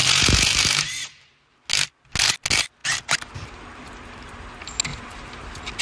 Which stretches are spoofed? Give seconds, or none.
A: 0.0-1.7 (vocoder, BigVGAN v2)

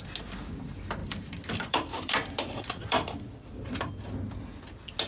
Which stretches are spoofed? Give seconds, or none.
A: 1.0-3.9 (vocoder, BigVGAN v2)

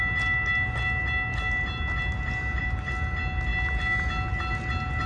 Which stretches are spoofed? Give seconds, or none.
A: none

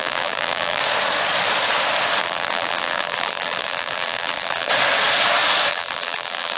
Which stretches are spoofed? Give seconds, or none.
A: 0.0-0.8 (vocoder, BigVGAN v2); 2.2-4.7; 5.7-6.6

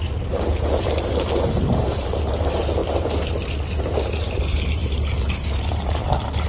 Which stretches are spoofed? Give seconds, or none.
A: 0.0-2.8 (vocoder, BigVGAN v2); 3.8-6.5

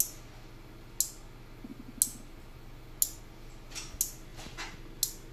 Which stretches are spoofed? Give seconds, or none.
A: none

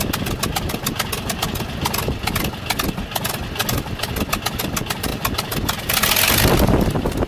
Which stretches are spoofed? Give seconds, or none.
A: 3.6-4.2 (vocoder, BigVGAN v2)

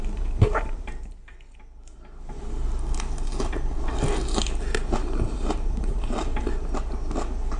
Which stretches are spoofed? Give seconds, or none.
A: 0.0-1.2 (vocoder, BigVGAN v2); 5.1-6.3